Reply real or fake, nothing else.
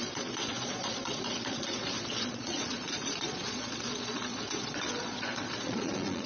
fake